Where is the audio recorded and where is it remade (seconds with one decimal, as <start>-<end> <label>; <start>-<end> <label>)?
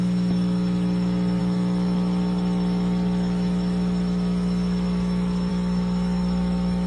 0.0-6.9 remade